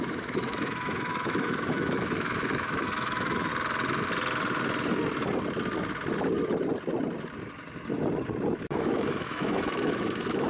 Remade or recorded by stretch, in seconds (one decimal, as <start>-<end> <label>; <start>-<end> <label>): 0.0-3.5 remade; 3.5-8.7 recorded; 8.7-10.5 remade